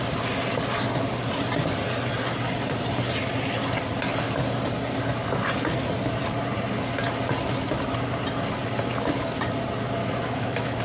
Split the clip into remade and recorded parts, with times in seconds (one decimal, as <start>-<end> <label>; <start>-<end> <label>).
0.0-10.0 recorded; 10.0-10.8 remade